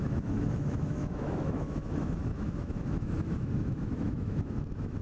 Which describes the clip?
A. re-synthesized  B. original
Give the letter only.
A